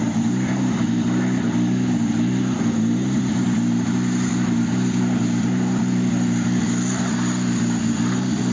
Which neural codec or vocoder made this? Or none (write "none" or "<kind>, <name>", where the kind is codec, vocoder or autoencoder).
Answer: none